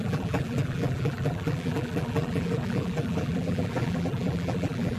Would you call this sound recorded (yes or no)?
no